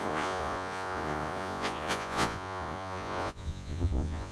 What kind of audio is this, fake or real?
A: fake